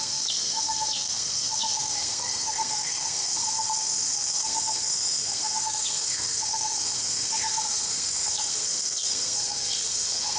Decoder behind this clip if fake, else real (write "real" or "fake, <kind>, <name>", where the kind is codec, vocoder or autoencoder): fake, codec, SNAC